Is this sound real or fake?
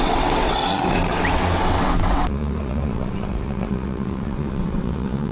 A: fake